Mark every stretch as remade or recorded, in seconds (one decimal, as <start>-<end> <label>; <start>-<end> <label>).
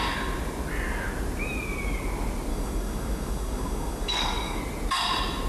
0.0-2.5 recorded; 2.5-4.6 remade; 4.6-5.5 recorded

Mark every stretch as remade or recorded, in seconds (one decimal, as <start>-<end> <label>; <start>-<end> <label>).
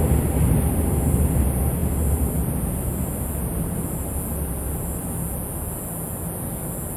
0.0-7.0 recorded